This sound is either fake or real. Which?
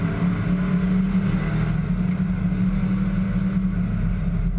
real